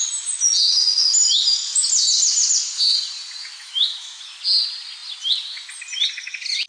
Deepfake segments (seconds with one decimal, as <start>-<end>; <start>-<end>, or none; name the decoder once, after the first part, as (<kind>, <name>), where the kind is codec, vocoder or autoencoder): 3.6-4.2 (autoencoder, DAC-VAE)